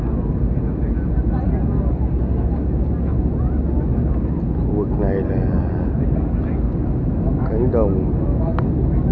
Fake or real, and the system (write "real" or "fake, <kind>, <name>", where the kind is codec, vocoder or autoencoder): real